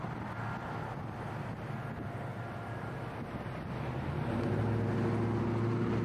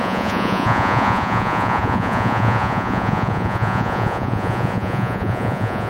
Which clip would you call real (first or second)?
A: first